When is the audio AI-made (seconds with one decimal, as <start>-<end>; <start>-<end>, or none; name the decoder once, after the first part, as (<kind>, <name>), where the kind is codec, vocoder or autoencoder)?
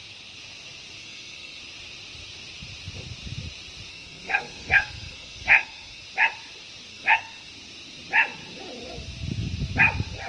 1.0-1.6 (codec, SNAC); 3.9-6.0; 6.9-7.5